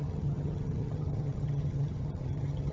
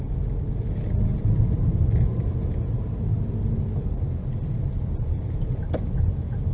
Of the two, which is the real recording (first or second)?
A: second